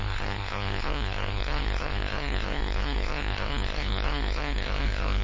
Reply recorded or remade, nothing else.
remade